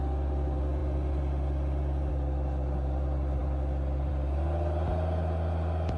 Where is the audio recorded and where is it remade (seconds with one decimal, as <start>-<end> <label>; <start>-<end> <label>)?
0.0-6.0 recorded